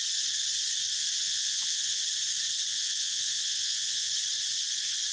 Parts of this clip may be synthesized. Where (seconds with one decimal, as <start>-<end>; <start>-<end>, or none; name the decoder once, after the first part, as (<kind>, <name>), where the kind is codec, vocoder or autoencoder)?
1.2-2.0 (vocoder, Vocos); 2.7-4.1